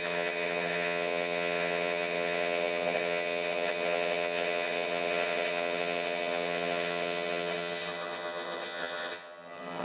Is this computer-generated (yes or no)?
yes